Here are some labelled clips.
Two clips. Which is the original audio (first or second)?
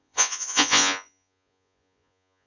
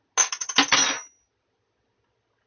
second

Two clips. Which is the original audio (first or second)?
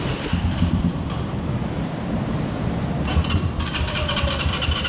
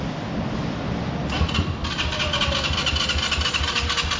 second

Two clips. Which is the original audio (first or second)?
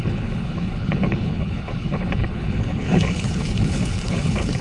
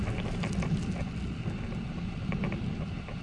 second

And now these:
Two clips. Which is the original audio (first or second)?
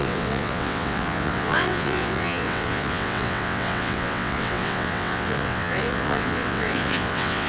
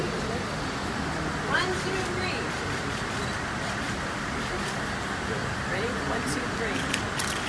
second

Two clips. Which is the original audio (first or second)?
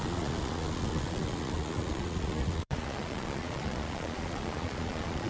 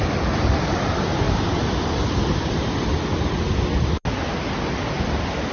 second